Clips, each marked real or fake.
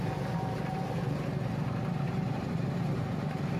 fake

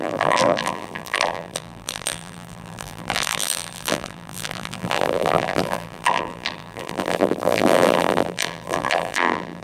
fake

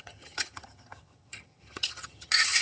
fake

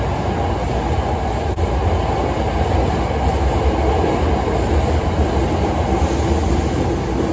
real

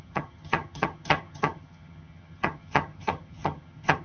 fake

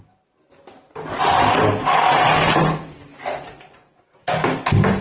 real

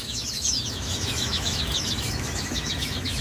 fake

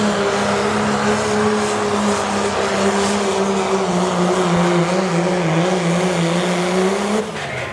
real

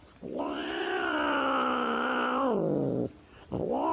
real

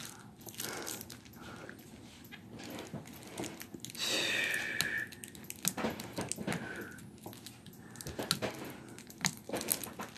real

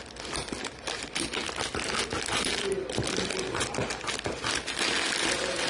real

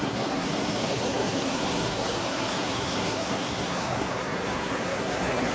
fake